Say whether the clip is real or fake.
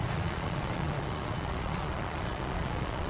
fake